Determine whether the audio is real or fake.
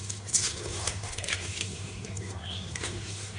fake